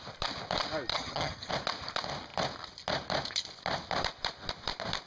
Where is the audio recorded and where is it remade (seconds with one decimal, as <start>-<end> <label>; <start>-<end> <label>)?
0.0-0.9 recorded; 0.9-1.5 remade; 1.5-5.1 recorded